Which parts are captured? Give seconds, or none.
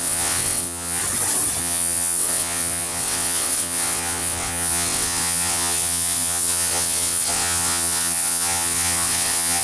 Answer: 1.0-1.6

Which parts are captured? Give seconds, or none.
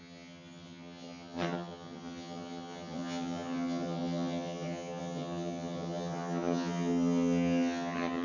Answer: none